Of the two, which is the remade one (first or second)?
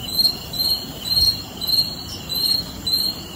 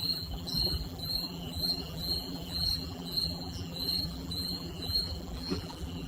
second